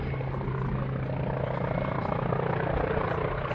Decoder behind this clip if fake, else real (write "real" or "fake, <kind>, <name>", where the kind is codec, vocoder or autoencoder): real